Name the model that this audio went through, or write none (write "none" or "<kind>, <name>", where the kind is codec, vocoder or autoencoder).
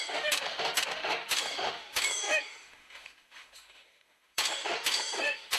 autoencoder, DAC-VAE